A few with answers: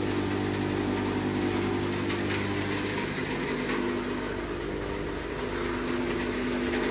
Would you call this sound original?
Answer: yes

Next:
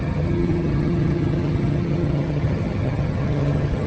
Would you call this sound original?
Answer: no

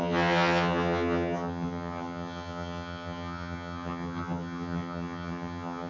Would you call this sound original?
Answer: no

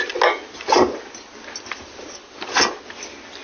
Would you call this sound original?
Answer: yes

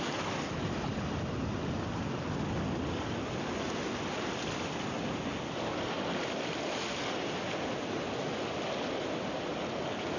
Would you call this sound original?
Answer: yes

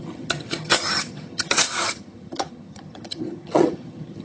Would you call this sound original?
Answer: no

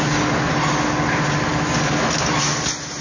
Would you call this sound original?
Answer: yes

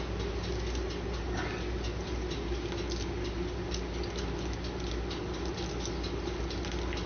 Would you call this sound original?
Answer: yes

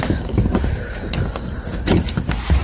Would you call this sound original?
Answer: yes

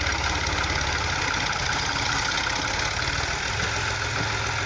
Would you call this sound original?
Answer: yes